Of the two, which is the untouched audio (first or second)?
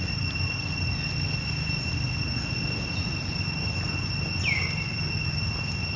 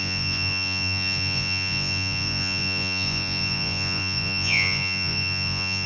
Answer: first